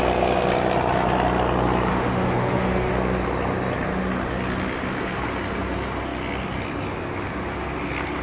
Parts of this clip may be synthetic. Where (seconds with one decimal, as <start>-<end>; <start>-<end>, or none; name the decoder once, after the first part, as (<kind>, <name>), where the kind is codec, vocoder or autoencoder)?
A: 1.9-2.9 (autoencoder, DAC-VAE)